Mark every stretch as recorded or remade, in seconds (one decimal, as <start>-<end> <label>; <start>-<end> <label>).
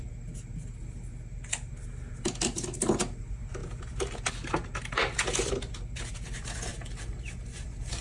0.0-6.7 recorded; 6.7-8.0 remade